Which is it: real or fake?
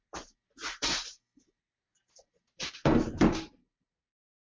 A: fake